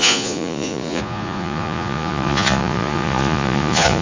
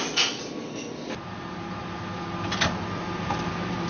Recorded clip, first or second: second